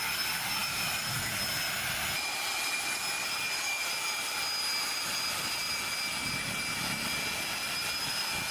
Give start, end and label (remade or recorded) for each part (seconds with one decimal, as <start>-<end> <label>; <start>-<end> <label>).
0.0-8.5 recorded